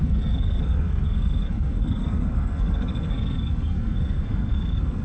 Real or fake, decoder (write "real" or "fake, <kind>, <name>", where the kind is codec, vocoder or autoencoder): fake, codec, SNAC